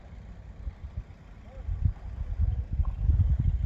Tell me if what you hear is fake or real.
real